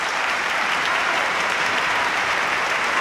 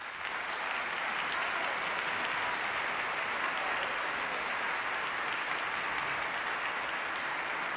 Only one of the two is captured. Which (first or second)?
second